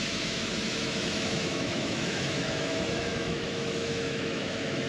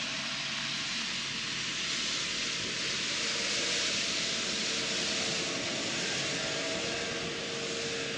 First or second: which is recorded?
second